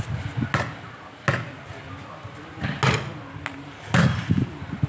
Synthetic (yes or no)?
no